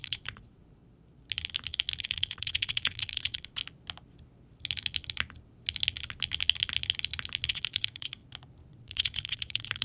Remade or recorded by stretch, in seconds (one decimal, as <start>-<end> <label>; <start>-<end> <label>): 0.0-0.8 remade; 0.8-2.0 recorded; 2.0-3.6 remade; 3.6-7.5 recorded; 7.5-8.2 remade; 8.2-8.7 recorded; 8.7-9.8 remade